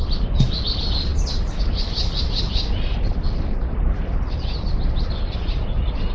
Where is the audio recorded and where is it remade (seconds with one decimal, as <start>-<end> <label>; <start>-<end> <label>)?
0.0-6.1 recorded